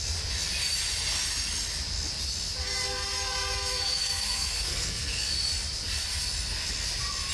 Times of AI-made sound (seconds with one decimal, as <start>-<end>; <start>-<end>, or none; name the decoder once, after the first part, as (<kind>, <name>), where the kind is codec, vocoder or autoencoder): 2.6-5.3 (codec, SNAC)